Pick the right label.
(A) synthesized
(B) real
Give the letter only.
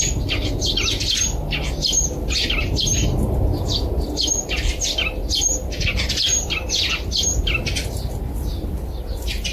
B